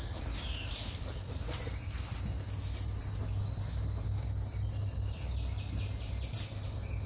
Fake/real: real